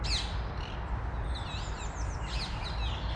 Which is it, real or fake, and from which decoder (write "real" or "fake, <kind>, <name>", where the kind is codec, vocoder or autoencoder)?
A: real